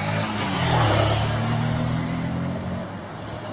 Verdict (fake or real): real